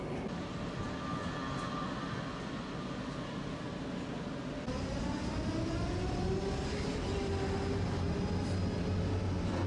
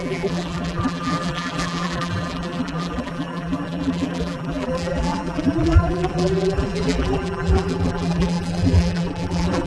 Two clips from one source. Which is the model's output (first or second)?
second